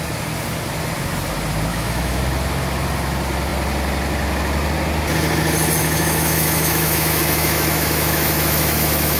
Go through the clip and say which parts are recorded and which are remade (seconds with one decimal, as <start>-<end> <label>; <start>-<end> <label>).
0.0-1.7 recorded; 1.7-2.2 remade; 2.2-5.8 recorded; 5.8-9.2 remade